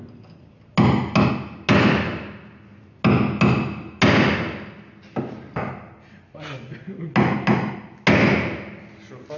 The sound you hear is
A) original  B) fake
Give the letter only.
A